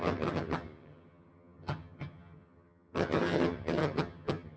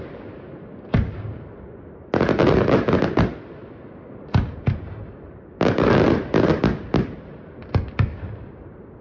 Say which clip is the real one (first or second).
second